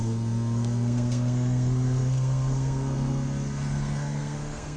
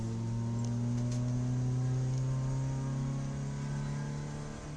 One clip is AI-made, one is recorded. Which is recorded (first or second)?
second